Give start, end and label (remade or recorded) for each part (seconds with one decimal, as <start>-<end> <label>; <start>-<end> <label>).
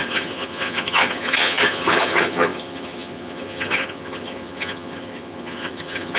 0.0-6.2 remade